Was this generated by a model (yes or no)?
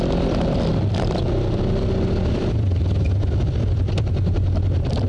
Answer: yes